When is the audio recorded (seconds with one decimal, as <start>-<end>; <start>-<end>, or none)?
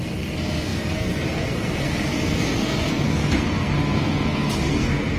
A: none